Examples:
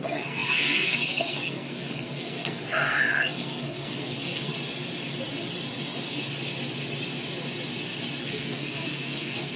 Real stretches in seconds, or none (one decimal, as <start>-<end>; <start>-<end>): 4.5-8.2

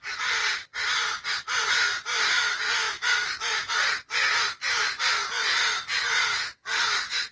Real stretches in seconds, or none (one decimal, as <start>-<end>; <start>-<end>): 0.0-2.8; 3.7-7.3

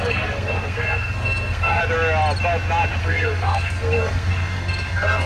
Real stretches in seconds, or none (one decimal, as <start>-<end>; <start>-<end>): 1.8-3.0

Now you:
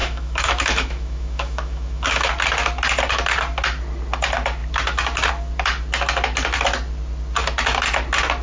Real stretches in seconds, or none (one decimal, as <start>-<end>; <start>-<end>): 2.3-8.4